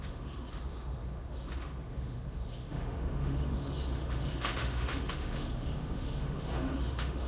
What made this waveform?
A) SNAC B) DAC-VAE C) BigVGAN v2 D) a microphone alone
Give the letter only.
B